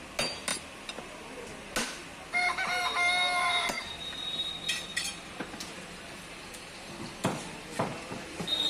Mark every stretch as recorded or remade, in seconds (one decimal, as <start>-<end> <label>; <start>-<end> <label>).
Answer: 0.0-4.9 recorded; 4.9-6.9 remade; 6.9-8.7 recorded